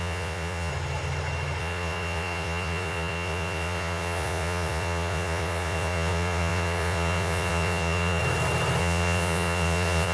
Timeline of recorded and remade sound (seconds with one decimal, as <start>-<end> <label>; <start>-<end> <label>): 0.0-0.7 remade; 0.7-1.6 recorded; 1.6-8.2 remade; 8.2-8.8 recorded; 8.8-10.1 remade